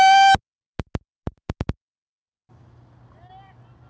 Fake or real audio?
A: real